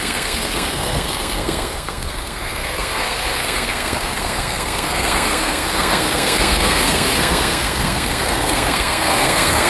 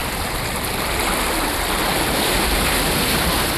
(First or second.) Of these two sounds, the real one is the second